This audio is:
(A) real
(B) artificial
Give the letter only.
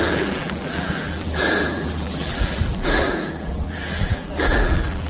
B